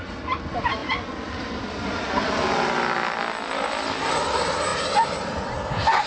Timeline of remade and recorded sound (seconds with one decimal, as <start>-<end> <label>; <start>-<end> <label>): 0.0-6.1 recorded